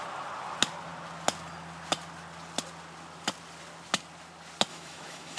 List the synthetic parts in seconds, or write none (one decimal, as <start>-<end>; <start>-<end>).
4.7-5.4

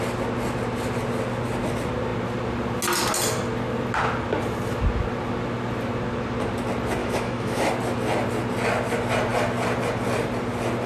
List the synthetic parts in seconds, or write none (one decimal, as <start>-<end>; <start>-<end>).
7.0-7.7

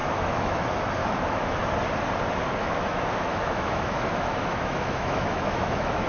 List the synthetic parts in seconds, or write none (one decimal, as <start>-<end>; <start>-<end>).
0.0-0.6; 1.0-1.6; 2.6-6.1

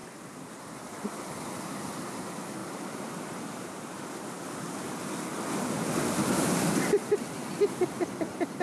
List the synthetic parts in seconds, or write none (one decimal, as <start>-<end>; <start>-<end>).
none

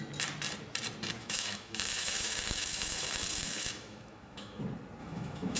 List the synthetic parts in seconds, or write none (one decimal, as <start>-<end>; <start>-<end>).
1.2-4.6; 5.0-5.6

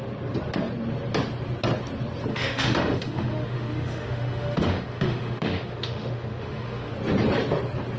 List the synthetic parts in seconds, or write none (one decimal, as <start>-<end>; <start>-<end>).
2.3-6.9

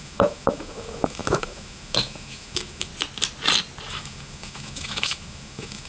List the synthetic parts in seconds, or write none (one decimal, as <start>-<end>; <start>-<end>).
0.0-2.9; 3.9-5.9